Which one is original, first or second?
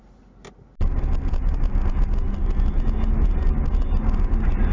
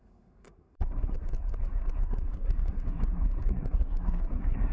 first